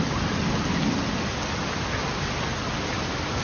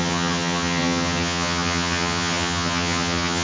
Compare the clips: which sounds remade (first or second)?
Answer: second